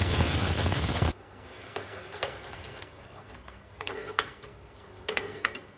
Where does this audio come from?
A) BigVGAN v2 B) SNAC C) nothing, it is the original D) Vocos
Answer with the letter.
B